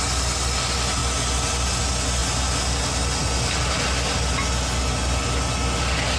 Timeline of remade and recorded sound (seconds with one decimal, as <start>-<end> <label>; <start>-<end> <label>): 0.0-6.2 recorded